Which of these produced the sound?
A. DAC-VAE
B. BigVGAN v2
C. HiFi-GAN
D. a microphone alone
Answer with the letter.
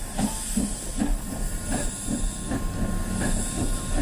D